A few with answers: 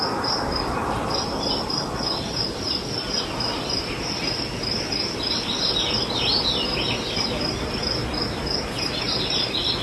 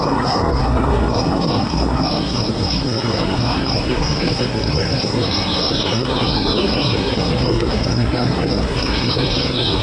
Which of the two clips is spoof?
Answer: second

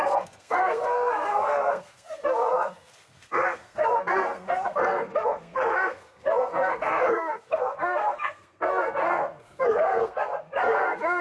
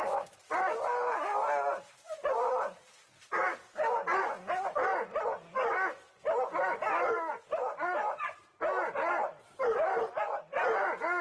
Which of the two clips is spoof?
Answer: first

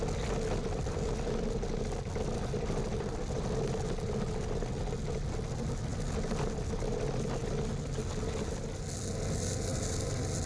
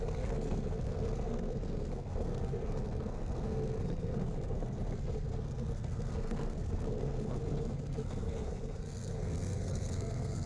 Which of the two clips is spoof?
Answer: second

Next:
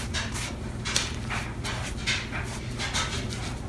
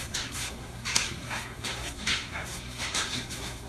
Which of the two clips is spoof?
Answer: second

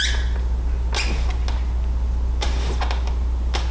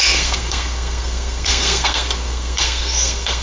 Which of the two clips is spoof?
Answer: second